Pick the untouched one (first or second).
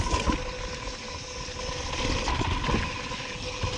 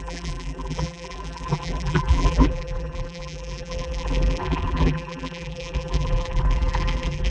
first